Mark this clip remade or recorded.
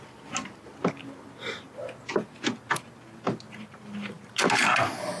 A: recorded